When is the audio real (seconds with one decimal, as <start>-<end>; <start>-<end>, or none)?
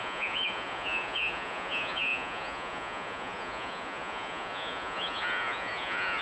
none